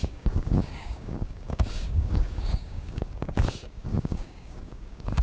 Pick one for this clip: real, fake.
fake